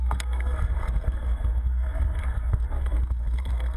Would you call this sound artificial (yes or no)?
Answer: yes